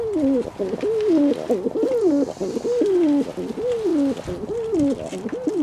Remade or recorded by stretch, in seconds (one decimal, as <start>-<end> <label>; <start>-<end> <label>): 0.0-0.6 recorded; 0.6-2.4 remade; 2.4-3.5 recorded; 3.5-3.9 remade; 3.9-4.5 recorded; 4.5-5.6 remade